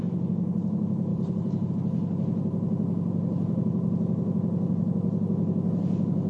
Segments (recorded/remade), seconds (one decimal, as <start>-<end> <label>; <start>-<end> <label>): 0.0-1.1 recorded; 1.1-1.7 remade; 1.7-6.3 recorded